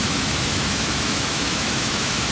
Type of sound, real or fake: fake